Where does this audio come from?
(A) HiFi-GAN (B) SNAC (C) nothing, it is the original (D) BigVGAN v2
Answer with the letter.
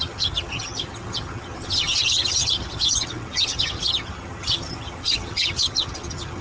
A